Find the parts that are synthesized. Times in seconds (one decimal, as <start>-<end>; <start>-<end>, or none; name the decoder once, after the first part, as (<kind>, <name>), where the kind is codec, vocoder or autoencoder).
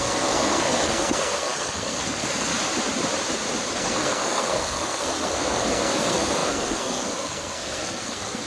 0.0-2.5 (codec, SNAC); 3.7-8.5